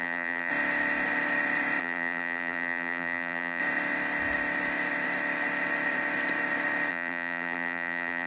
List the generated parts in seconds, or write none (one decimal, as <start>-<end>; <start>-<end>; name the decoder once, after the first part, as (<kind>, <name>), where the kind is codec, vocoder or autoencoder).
0.0-0.5 (vocoder, BigVGAN v2); 1.8-3.6; 6.9-8.3